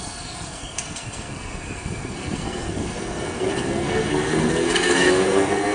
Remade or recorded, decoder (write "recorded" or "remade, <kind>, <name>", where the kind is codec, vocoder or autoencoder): remade, codec, SNAC